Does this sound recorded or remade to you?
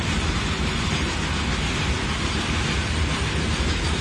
recorded